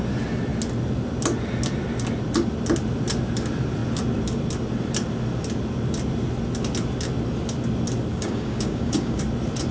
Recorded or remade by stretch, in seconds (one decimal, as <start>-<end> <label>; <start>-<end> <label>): 0.0-8.1 recorded; 8.1-9.2 remade; 9.2-9.7 recorded